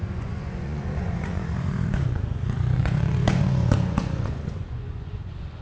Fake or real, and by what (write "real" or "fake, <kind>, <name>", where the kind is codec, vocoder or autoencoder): fake, vocoder, Vocos